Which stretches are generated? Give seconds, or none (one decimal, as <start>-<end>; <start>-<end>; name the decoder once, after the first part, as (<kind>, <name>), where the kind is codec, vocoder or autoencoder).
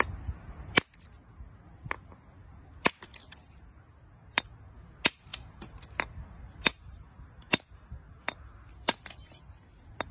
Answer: 2.4-3.6 (vocoder, BigVGAN v2); 5.3-9.4